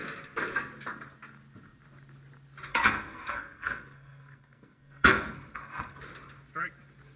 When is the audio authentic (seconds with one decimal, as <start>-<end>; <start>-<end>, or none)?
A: 0.0-2.7; 6.0-7.2